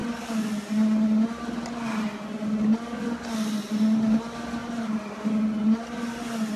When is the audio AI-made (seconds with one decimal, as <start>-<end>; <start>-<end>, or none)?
4.6-5.3